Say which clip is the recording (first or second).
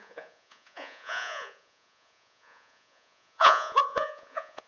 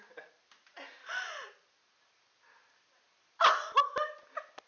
second